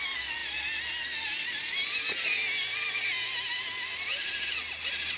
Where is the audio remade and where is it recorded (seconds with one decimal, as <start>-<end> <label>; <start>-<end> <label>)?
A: 0.0-5.2 recorded